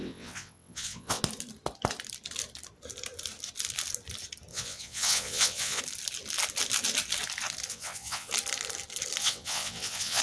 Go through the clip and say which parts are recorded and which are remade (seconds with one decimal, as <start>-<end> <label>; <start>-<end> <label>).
0.0-1.2 remade; 1.2-4.5 recorded; 4.5-5.8 remade; 5.8-7.7 recorded; 7.7-8.3 remade; 8.3-9.2 recorded; 9.2-10.2 remade